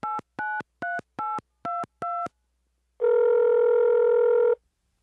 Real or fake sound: real